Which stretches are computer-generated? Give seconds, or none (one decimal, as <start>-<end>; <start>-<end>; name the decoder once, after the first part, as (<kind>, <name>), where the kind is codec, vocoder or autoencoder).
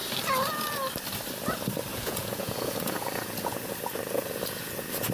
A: 1.9-5.1 (vocoder, Vocos)